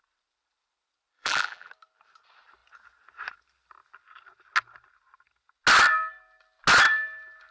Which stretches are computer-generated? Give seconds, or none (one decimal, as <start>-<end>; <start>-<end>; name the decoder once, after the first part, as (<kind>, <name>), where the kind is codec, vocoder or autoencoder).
1.1-1.7 (vocoder, BigVGAN v2)